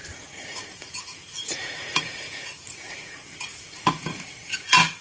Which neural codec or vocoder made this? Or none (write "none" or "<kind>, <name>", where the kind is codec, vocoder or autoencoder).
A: vocoder, Vocos